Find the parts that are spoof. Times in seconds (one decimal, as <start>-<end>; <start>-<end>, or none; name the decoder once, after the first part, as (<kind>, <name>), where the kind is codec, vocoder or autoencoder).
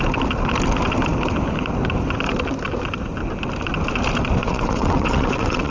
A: 4.4-5.7 (vocoder, WaveNeXt)